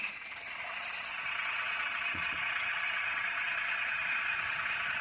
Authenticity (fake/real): fake